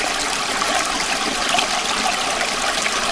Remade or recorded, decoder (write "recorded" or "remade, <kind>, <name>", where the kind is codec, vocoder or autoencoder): recorded